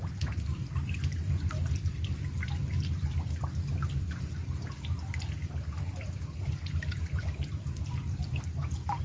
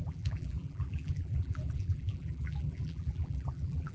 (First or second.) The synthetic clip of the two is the second